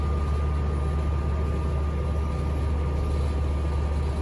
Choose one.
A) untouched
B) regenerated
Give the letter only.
A